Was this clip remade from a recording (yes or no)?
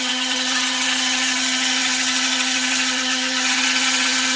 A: yes